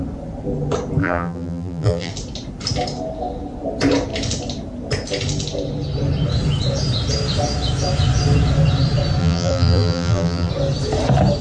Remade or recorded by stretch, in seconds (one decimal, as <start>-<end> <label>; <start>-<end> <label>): 0.0-1.0 recorded; 1.0-2.1 remade; 2.1-9.2 recorded; 9.2-10.5 remade; 10.5-11.4 recorded